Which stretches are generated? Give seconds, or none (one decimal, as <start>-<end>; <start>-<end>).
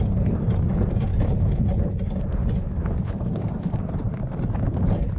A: 1.1-4.2